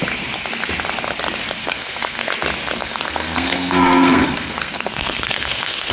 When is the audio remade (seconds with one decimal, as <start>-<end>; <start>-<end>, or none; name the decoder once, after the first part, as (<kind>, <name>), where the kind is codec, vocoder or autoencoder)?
1.6-2.3 (codec, SNAC); 2.8-5.9